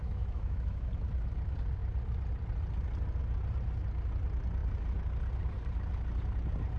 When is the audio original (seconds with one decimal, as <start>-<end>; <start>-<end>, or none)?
0.9-6.8